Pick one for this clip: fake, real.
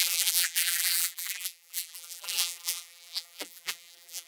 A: fake